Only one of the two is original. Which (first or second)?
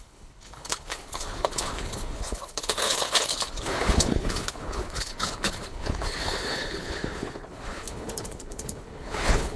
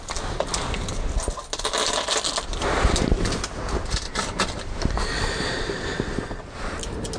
second